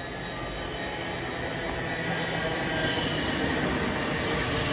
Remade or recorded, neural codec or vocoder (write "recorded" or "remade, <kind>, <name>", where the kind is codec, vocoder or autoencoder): recorded